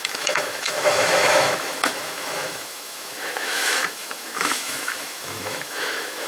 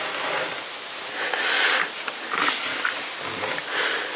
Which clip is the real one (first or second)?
second